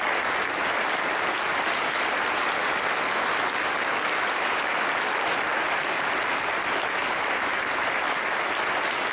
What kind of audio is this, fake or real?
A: real